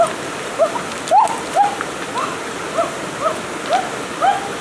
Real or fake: real